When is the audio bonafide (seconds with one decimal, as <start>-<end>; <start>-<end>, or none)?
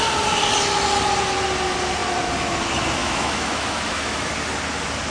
0.0-3.0; 4.3-5.1